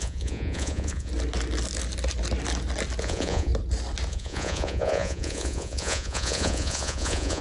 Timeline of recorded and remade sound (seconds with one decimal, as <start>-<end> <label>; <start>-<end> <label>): 0.0-1.1 remade; 1.1-3.0 recorded; 3.0-3.5 remade; 3.5-4.1 recorded; 4.1-7.4 remade